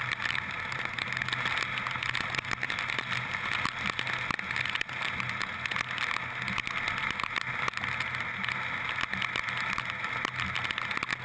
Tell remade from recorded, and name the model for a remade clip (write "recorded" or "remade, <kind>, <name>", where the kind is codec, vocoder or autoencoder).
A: recorded